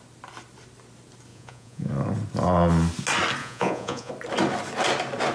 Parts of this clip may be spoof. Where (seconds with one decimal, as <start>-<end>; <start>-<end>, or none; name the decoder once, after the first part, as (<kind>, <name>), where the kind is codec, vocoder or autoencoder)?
1.3-1.9 (vocoder, Vocos); 3.4-4.1

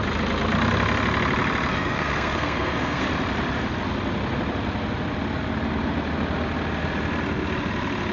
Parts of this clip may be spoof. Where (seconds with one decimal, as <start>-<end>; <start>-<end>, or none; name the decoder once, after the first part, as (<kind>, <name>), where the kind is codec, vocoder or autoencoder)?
1.7-3.0 (codec, SNAC)

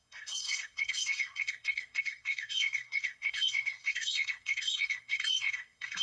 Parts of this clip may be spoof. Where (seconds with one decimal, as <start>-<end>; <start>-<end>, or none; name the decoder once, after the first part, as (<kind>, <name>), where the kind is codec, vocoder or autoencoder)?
0.0-6.0 (codec, SNAC)

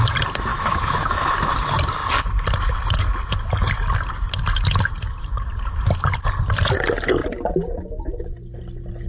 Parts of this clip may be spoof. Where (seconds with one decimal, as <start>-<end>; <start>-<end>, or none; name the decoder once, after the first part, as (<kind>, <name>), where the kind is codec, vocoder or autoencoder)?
0.5-1.3 (autoencoder, DAC-VAE)

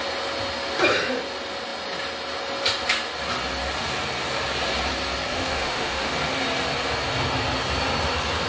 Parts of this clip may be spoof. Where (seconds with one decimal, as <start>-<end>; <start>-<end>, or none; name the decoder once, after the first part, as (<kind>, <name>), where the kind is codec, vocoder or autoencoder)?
5.3-6.1 (autoencoder, DAC-VAE)

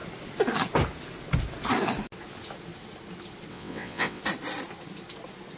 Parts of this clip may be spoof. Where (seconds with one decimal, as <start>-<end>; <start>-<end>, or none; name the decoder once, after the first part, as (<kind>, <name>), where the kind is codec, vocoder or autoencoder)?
3.5-4.2 (vocoder, WaveNeXt)

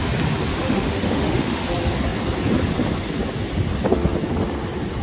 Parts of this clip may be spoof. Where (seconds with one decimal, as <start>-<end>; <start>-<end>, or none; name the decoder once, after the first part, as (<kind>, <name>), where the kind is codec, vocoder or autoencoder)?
0.5-1.6 (autoencoder, DAC-VAE)